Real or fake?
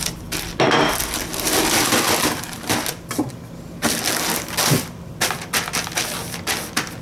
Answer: real